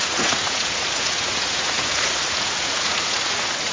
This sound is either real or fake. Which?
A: fake